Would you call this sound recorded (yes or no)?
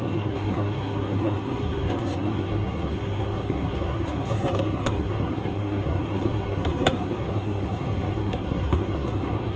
no